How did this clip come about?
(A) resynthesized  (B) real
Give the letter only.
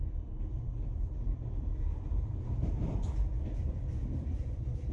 A